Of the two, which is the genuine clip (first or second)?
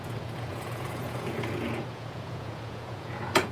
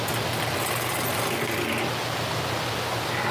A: second